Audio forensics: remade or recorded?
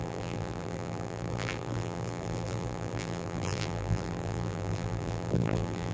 remade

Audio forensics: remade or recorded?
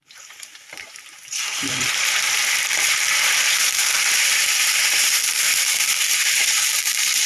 remade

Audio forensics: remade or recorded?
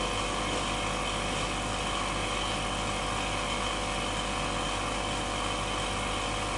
recorded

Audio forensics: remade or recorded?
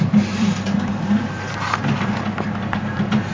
remade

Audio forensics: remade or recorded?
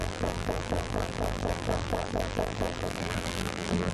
remade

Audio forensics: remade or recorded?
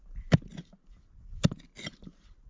recorded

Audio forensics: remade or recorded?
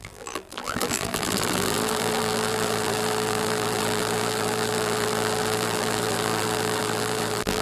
remade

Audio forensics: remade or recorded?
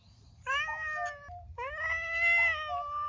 recorded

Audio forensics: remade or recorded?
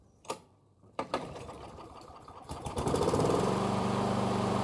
remade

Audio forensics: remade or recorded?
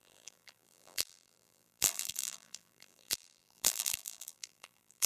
remade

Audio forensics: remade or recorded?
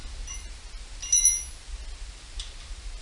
recorded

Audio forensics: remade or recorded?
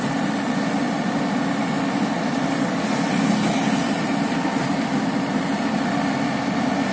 recorded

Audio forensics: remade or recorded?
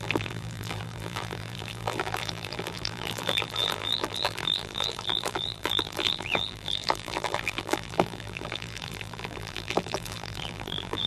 remade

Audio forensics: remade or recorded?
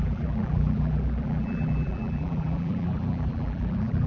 remade